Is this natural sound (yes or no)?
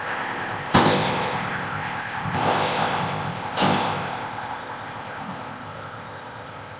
no